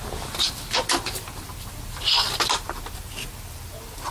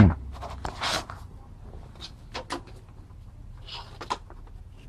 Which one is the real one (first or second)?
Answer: second